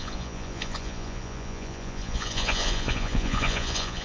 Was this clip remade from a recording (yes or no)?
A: yes